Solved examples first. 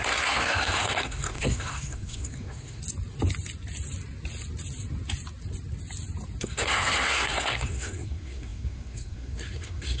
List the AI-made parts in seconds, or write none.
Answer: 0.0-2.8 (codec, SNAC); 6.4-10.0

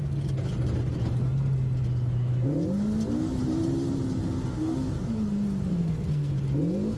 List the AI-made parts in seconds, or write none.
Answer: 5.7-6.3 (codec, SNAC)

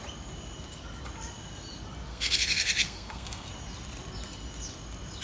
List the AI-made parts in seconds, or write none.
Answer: 2.1-3.5 (codec, SNAC)

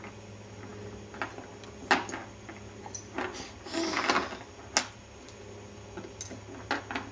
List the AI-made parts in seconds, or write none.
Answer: none